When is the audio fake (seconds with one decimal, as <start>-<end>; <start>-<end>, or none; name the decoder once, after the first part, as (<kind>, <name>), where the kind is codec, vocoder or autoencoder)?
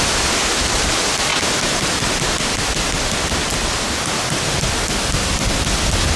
none